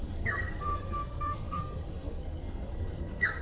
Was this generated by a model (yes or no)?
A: yes